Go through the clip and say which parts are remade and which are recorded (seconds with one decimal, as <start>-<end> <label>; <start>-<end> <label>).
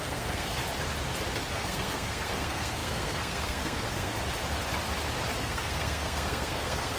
0.0-0.6 remade; 0.6-1.5 recorded; 1.5-4.1 remade; 4.1-5.4 recorded; 5.4-7.0 remade